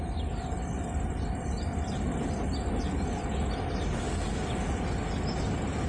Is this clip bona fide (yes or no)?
yes